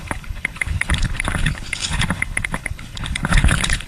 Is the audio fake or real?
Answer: fake